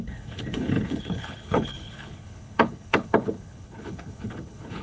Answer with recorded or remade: remade